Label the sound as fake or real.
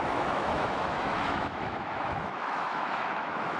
fake